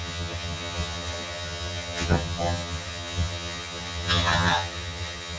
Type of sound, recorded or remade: remade